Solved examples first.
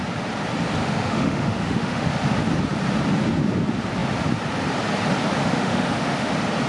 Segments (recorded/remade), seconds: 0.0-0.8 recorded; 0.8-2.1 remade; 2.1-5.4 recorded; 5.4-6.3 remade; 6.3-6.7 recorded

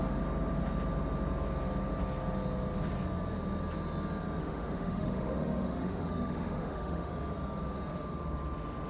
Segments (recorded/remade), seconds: 0.0-4.4 recorded; 4.4-7.1 remade; 7.1-8.9 recorded

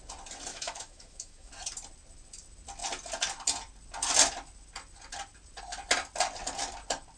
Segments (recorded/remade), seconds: 0.0-0.5 recorded; 0.5-1.5 remade; 1.5-7.2 recorded

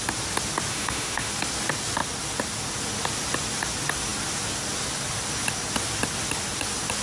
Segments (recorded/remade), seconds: 0.0-0.7 recorded; 0.7-1.3 remade; 1.3-7.0 recorded